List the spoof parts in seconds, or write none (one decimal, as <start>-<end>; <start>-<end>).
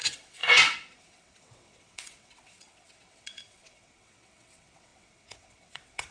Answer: 0.0-6.1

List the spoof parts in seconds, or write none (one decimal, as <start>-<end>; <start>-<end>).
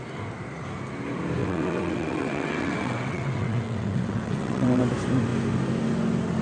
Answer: 1.4-4.8